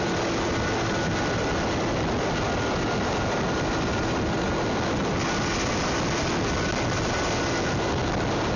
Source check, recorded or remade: recorded